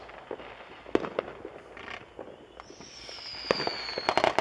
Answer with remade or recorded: recorded